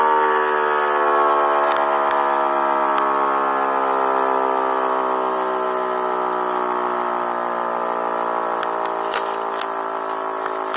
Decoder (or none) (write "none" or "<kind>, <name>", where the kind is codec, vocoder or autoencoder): none